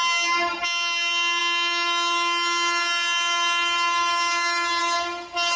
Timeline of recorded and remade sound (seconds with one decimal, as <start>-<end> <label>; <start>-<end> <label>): 0.0-5.6 recorded